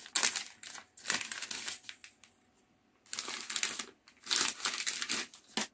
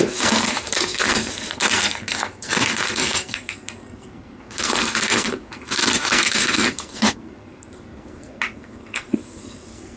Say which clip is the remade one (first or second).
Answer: second